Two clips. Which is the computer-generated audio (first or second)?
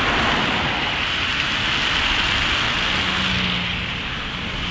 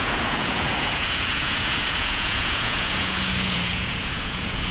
second